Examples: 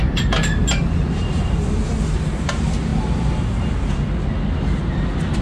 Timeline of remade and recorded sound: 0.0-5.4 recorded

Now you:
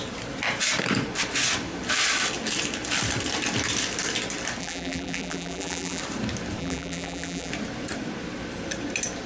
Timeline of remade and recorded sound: 0.0-4.6 recorded; 4.6-6.0 remade; 6.0-6.6 recorded; 6.6-7.5 remade; 7.5-9.3 recorded

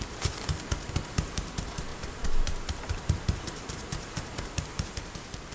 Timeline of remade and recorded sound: 0.0-1.9 recorded; 1.9-5.5 remade

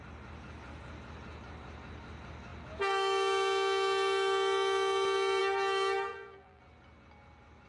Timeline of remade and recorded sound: 0.0-6.1 recorded; 6.1-6.6 remade; 6.6-7.7 recorded

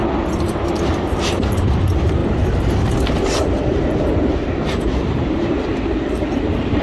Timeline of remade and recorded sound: 0.0-0.6 recorded; 0.6-6.8 remade

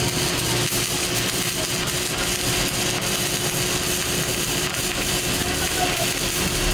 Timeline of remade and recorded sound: 0.0-4.3 recorded; 4.3-5.2 remade; 5.2-6.7 recorded